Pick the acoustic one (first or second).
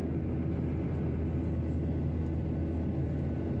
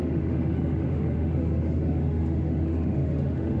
first